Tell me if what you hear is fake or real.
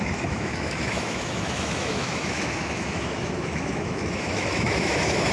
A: fake